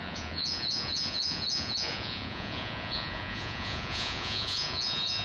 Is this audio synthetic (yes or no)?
yes